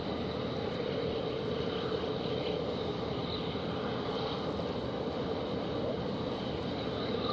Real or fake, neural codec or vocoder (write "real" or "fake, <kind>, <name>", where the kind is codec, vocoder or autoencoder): real